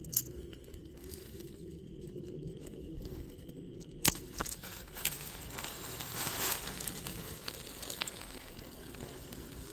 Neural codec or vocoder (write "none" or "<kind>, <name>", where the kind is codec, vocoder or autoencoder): codec, SNAC